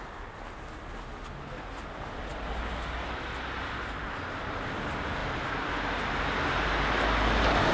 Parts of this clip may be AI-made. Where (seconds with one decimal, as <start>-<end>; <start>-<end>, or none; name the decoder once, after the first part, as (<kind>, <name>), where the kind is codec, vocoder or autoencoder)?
none